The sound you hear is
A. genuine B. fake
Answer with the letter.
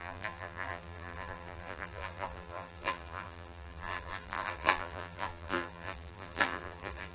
B